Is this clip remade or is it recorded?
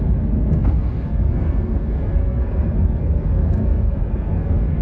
remade